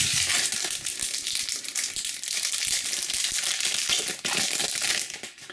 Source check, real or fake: real